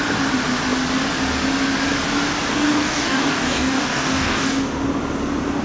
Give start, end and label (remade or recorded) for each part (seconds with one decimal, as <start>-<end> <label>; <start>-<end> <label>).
0.0-2.5 recorded; 2.5-4.5 remade; 4.5-5.6 recorded